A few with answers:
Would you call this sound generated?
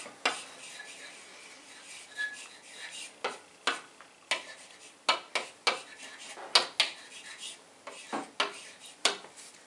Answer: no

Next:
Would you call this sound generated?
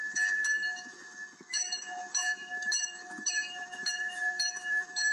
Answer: yes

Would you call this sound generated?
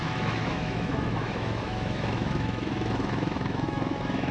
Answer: yes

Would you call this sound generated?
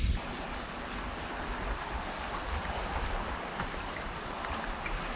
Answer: no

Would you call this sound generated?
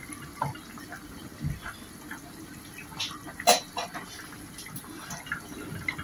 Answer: no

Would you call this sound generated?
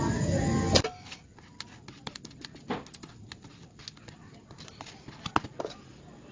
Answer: no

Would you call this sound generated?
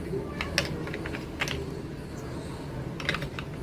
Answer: no